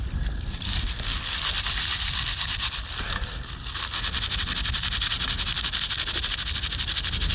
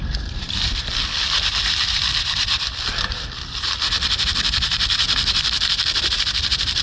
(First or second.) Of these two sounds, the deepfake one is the second